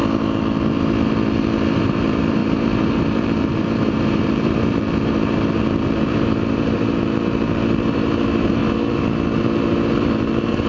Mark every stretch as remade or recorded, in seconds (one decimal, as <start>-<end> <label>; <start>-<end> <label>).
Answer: 0.0-1.8 recorded; 1.8-8.6 remade; 8.6-9.4 recorded; 9.4-10.7 remade